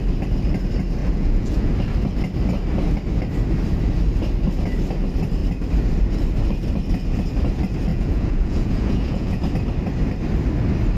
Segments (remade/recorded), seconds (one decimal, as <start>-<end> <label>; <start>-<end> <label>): 0.0-1.0 recorded; 1.0-1.7 remade; 1.7-7.9 recorded; 7.9-9.4 remade; 9.4-11.0 recorded